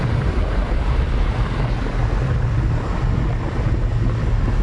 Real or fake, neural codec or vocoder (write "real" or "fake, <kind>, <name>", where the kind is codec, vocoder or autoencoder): real